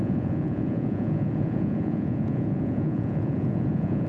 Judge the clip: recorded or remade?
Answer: remade